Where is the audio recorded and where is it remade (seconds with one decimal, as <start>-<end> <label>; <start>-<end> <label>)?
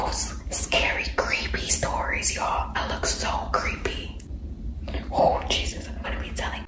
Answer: 0.0-1.7 remade; 1.7-2.4 recorded; 2.4-5.8 remade; 5.8-6.7 recorded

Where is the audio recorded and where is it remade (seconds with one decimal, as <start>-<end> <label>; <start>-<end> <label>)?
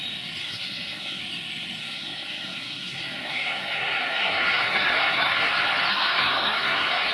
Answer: 0.0-0.4 recorded; 0.4-1.2 remade; 1.2-1.8 recorded; 1.8-5.5 remade; 5.5-5.9 recorded; 5.9-7.1 remade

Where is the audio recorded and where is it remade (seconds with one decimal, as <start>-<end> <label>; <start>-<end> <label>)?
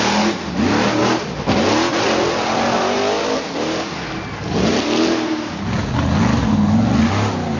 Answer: 0.0-7.6 recorded